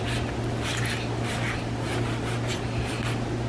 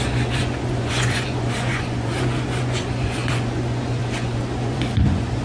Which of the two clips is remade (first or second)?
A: second